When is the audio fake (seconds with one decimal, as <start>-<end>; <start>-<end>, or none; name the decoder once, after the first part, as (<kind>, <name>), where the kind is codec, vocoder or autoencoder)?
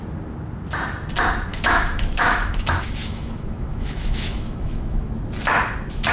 1.5-5.1 (autoencoder, DAC-VAE)